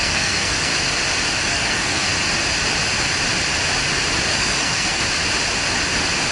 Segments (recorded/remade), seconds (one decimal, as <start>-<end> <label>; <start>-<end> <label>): 0.0-0.7 remade; 0.7-1.4 recorded; 1.4-2.1 remade; 2.1-4.3 recorded; 4.3-5.0 remade; 5.0-6.3 recorded